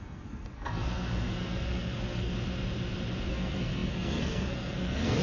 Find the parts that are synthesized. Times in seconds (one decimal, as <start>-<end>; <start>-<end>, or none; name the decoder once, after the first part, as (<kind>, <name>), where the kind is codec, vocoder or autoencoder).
0.0-2.3 (codec, SNAC); 3.3-5.2